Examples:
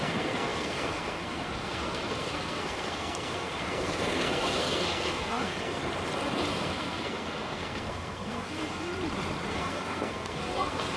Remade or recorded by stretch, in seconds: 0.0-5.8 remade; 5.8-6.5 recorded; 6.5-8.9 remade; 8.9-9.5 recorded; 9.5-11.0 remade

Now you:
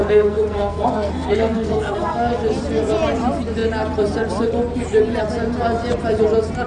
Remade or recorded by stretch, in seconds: 0.0-2.3 remade; 2.3-6.7 recorded

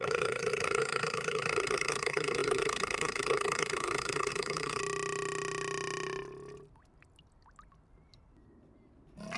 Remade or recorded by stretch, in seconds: 0.0-4.8 remade; 4.8-9.4 recorded

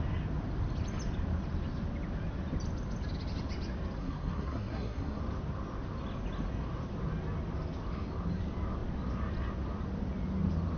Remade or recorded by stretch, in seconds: 0.0-4.0 recorded; 4.0-5.2 remade; 5.2-10.8 recorded

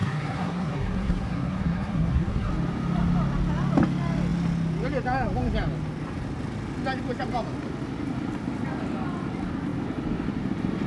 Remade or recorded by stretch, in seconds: 0.0-2.5 remade; 2.5-10.9 recorded